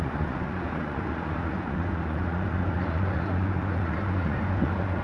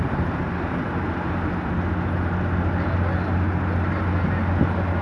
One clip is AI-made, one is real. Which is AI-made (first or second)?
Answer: first